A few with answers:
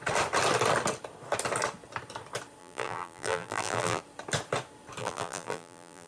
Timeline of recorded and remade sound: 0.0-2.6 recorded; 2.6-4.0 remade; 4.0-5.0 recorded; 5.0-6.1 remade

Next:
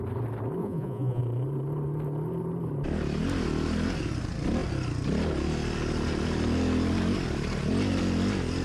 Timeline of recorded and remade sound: 0.0-0.6 recorded; 0.6-1.2 remade; 1.2-8.6 recorded

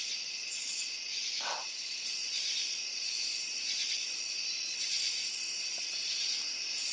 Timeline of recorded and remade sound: 0.0-3.2 remade; 3.2-3.9 recorded; 3.9-5.2 remade; 5.2-5.8 recorded; 5.8-6.9 remade

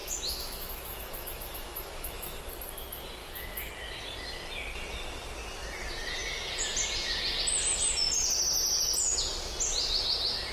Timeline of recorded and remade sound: 0.0-2.5 remade; 2.5-3.2 recorded; 3.2-3.7 remade; 3.7-10.5 recorded

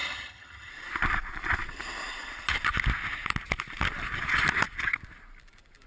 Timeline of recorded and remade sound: 0.0-0.7 remade; 0.7-5.9 recorded

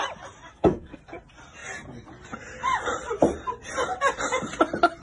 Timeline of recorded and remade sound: 0.0-0.5 recorded; 0.5-1.0 remade; 1.0-5.0 recorded

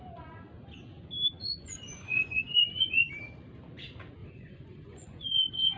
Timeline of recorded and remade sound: 0.0-1.4 recorded; 1.4-3.1 remade; 3.1-4.2 recorded; 4.2-5.8 remade

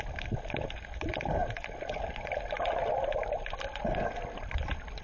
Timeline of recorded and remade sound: 0.0-5.0 recorded